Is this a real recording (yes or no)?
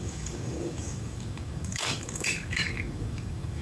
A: no